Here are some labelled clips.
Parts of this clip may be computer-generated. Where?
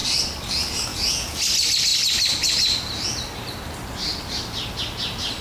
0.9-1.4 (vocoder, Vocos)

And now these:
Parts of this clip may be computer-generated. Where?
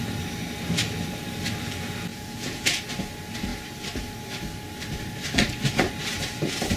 2.1-2.8 (vocoder, Vocos)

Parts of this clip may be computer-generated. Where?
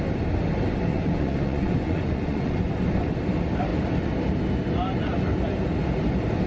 0.9-2.7 (vocoder, Vocos)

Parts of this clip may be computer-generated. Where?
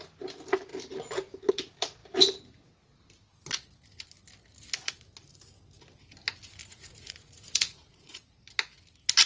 6.6-8.4 (vocoder, Vocos)